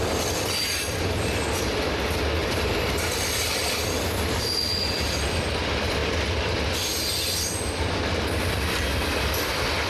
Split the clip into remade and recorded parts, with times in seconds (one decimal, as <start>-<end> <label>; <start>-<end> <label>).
0.0-9.9 recorded